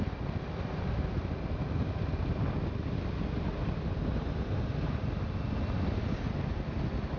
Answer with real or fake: real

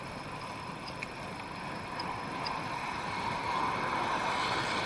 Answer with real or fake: real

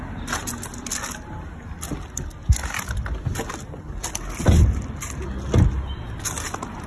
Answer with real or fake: real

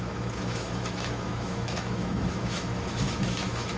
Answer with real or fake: fake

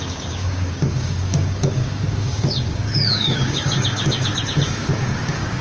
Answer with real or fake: fake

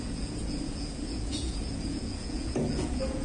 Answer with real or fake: fake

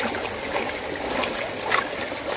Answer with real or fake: real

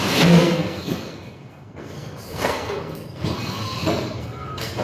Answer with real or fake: fake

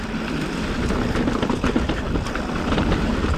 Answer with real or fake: real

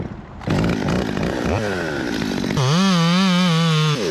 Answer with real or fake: real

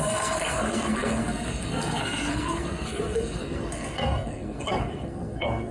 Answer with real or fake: fake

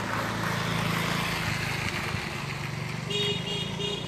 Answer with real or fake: real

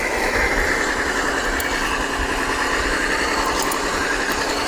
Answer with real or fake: real